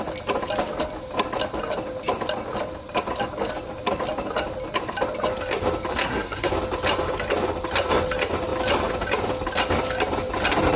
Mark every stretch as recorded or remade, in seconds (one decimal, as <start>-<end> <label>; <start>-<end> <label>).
0.0-5.9 recorded; 5.9-6.5 remade; 6.5-10.8 recorded